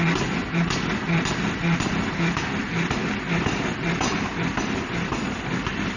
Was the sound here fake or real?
real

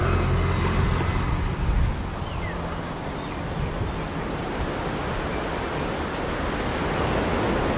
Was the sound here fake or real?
real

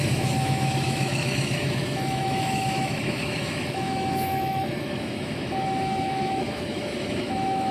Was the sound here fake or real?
fake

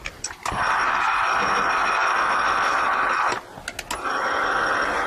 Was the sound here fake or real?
real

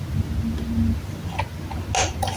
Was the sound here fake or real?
real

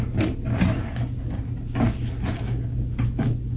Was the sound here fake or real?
real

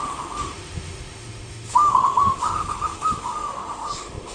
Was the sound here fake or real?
fake